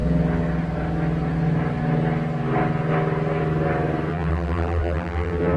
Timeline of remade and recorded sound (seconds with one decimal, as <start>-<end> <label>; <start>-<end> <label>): 0.0-4.1 recorded; 4.1-5.6 remade